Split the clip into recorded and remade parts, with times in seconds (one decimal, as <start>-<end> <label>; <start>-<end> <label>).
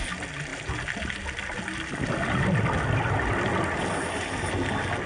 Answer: 0.0-5.1 recorded